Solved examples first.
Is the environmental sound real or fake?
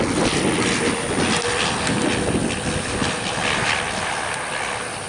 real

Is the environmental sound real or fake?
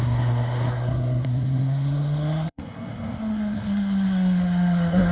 fake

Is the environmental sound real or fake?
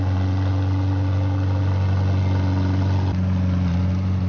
real